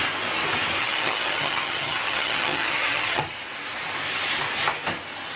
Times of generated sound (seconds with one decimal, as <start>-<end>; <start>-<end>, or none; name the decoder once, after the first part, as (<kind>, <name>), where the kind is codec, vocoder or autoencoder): 0.8-3.2 (vocoder, HiFi-GAN)